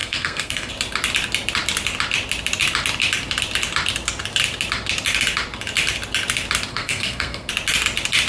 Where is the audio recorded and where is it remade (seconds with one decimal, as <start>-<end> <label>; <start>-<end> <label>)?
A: 0.0-0.7 remade; 0.7-6.7 recorded; 6.7-7.5 remade; 7.5-8.3 recorded